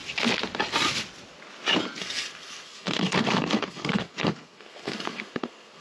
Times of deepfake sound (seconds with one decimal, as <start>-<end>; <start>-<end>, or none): 2.0-5.8